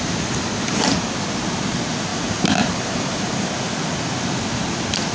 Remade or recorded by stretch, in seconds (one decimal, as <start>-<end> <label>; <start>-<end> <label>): 0.0-2.1 recorded; 2.1-3.4 remade; 3.4-5.1 recorded

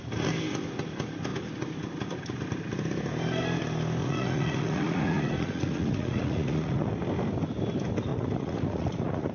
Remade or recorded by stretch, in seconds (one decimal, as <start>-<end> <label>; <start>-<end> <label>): 0.0-4.0 recorded; 4.0-6.9 remade; 6.9-8.1 recorded; 8.1-9.3 remade

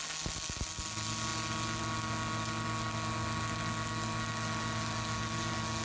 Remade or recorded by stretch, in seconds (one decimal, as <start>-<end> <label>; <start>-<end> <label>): 0.0-5.8 recorded

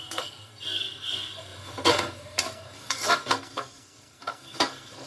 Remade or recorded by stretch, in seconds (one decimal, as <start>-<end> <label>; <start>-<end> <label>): 0.0-5.1 remade

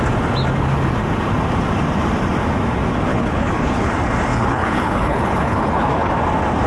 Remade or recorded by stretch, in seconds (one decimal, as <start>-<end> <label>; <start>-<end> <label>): 0.0-3.1 recorded; 3.1-3.9 remade; 3.9-4.3 recorded; 4.3-6.1 remade; 6.1-6.7 recorded